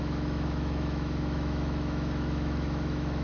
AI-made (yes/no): yes